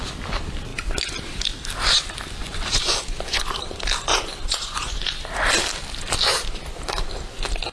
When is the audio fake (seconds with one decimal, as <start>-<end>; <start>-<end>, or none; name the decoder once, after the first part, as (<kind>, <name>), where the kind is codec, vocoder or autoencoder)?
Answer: 2.4-3.4 (vocoder, Vocos); 4.1-5.1